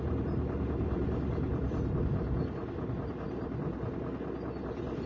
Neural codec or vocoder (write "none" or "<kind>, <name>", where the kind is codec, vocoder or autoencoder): none